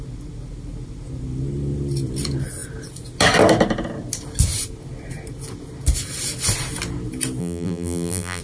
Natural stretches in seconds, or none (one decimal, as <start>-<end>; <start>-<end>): 0.0-7.4